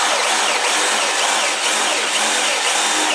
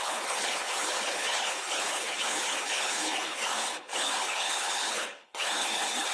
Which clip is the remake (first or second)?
second